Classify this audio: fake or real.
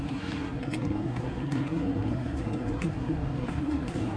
fake